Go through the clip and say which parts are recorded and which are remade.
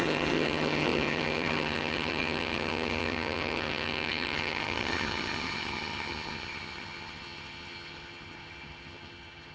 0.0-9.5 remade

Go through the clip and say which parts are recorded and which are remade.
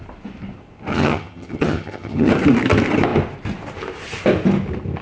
0.0-0.9 recorded; 0.9-2.3 remade; 2.3-5.0 recorded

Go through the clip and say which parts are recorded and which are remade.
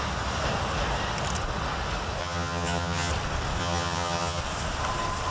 0.0-2.2 recorded; 2.2-3.1 remade; 3.1-3.6 recorded; 3.6-4.4 remade; 4.4-5.3 recorded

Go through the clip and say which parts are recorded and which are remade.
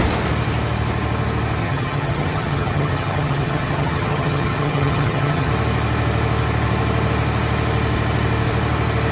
0.0-1.6 recorded; 1.6-5.5 remade; 5.5-9.1 recorded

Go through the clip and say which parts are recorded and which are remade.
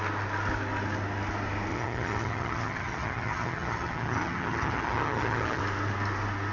0.0-1.7 recorded; 1.7-5.6 remade; 5.6-6.5 recorded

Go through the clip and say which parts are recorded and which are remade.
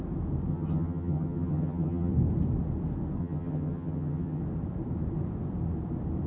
0.0-0.5 recorded; 0.5-2.1 remade; 2.1-3.2 recorded; 3.2-4.4 remade; 4.4-6.3 recorded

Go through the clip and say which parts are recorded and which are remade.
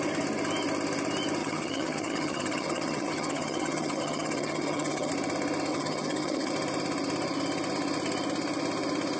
0.0-1.4 recorded; 1.4-5.1 remade; 5.1-5.7 recorded; 5.7-6.5 remade; 6.5-9.2 recorded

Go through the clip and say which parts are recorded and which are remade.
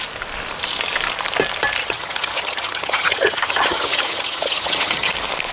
0.0-1.8 recorded; 1.8-5.1 remade; 5.1-5.5 recorded